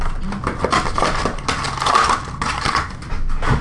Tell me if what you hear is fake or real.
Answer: real